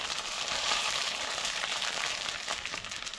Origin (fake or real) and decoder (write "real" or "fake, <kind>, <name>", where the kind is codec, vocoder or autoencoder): fake, vocoder, BigVGAN v2